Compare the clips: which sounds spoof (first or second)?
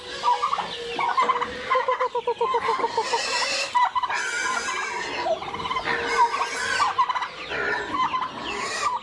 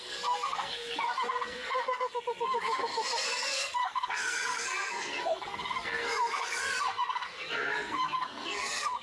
second